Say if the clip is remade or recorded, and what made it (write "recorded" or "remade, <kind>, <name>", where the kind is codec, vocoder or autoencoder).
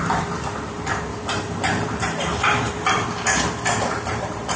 remade, vocoder, BigVGAN v2